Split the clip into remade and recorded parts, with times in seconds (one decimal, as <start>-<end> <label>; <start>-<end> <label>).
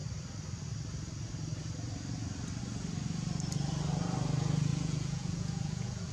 0.0-4.7 recorded; 4.7-6.1 remade